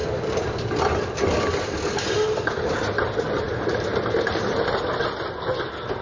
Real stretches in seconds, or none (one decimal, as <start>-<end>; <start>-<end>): 0.0-6.0